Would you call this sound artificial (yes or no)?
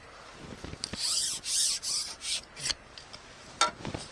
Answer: no